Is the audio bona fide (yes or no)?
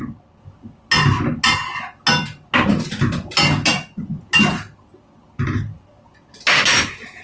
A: yes